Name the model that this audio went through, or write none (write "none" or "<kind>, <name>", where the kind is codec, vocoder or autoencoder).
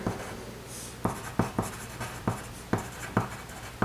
none